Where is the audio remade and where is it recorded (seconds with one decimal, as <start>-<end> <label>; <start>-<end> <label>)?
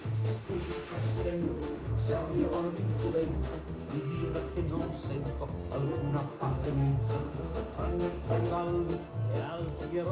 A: 0.0-4.5 remade; 4.5-6.3 recorded; 6.3-8.5 remade; 8.5-10.1 recorded